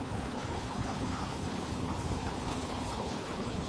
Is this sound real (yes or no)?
no